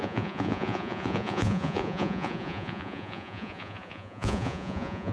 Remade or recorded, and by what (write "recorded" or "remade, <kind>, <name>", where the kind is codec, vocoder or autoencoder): remade, vocoder, Vocos